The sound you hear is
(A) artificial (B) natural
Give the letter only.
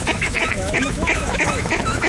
A